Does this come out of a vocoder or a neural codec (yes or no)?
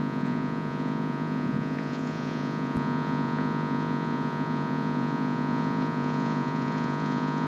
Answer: yes